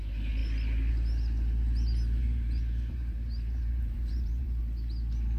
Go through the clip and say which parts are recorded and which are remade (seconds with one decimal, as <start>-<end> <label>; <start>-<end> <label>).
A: 0.0-2.2 recorded; 2.2-4.6 remade; 4.6-5.4 recorded